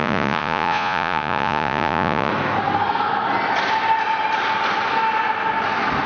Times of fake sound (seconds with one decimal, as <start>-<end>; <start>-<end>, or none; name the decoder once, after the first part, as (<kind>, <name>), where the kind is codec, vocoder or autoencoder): 0.0-2.3 (vocoder, Vocos)